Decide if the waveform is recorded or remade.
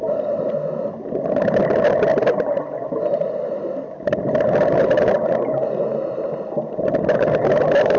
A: recorded